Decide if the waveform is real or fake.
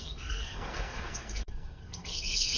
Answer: fake